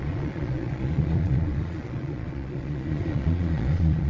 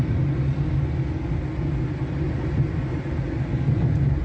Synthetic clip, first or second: first